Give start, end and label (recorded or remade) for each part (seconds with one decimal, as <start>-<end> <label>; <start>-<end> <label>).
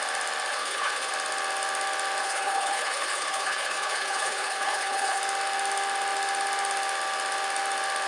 0.0-0.5 recorded; 0.5-1.1 remade; 1.1-2.2 recorded; 2.2-5.2 remade; 5.2-8.1 recorded